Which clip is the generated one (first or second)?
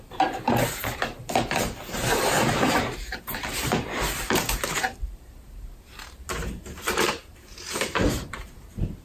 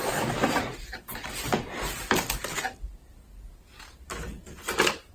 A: first